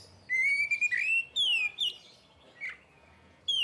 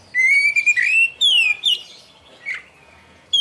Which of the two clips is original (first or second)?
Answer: first